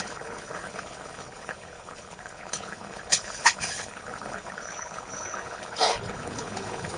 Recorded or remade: remade